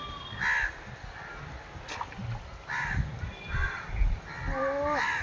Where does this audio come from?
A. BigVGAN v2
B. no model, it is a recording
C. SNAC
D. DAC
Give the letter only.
B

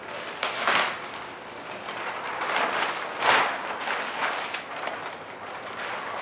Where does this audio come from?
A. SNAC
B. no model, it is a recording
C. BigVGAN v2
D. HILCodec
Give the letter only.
B